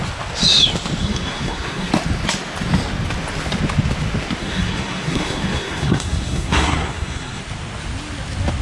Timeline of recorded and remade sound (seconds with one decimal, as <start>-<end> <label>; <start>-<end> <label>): 0.0-1.0 recorded; 1.0-1.9 remade; 1.9-4.4 recorded; 4.4-7.4 remade; 7.4-8.6 recorded